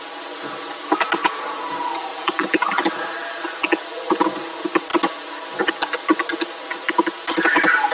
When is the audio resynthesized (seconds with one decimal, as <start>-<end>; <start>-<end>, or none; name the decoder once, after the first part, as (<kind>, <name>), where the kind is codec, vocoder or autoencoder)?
1.2-1.7 (vocoder, BigVGAN v2); 2.1-2.8